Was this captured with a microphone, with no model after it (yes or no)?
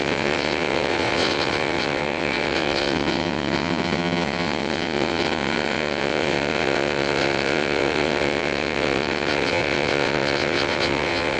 no